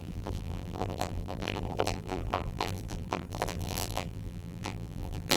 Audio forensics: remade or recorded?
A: remade